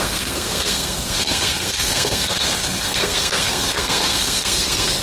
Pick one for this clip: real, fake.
fake